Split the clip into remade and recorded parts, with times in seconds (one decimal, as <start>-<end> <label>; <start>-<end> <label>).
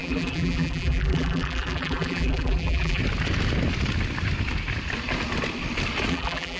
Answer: 0.0-3.0 remade; 3.0-6.1 recorded; 6.1-6.6 remade